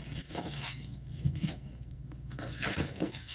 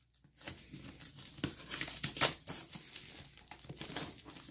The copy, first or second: first